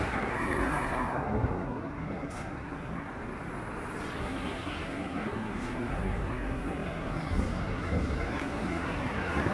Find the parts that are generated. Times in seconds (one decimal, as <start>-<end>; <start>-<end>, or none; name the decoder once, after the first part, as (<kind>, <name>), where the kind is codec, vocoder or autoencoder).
0.0-3.1 (codec, SNAC); 4.2-9.5

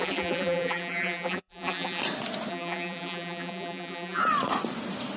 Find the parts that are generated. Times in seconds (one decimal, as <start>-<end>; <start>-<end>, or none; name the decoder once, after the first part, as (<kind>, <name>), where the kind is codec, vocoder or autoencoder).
0.0-2.0 (vocoder, BigVGAN v2); 2.5-4.2

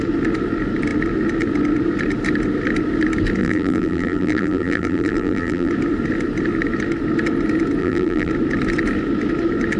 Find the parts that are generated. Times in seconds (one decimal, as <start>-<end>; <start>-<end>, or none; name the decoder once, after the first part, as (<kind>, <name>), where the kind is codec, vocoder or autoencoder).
3.4-5.7 (vocoder, BigVGAN v2); 7.8-8.3

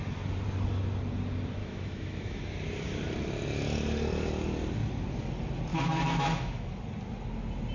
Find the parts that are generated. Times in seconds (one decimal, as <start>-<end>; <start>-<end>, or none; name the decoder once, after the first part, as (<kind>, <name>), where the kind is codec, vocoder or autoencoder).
1.6-2.4 (autoencoder, DAC-VAE); 5.7-6.7

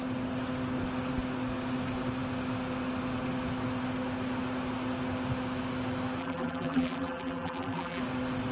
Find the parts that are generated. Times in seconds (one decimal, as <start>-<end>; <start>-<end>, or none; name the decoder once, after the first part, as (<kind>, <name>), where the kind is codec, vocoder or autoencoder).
6.2-8.0 (vocoder, BigVGAN v2)

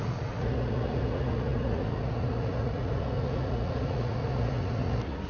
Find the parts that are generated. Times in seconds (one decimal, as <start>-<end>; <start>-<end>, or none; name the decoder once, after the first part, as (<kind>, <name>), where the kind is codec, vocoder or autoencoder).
0.0-5.3 (vocoder, Vocos)

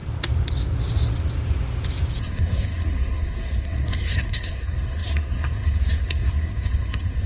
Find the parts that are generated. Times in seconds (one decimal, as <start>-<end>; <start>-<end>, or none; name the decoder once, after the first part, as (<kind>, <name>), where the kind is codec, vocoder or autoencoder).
2.2-7.3 (codec, SNAC)

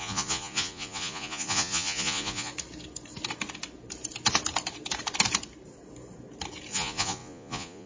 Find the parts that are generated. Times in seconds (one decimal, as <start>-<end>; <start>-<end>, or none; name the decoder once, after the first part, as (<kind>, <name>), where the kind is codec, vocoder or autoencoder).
0.0-2.5 (vocoder, Vocos); 6.7-7.9